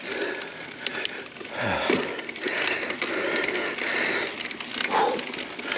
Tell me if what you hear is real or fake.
real